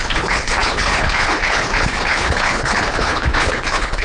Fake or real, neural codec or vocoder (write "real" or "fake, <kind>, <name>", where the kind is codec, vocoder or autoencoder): fake, codec, HILCodec